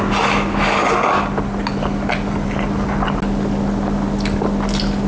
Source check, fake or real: real